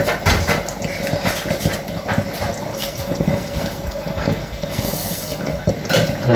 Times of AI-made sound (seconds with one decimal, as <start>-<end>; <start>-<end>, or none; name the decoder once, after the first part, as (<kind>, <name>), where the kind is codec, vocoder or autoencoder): 2.7-5.7 (codec, SNAC)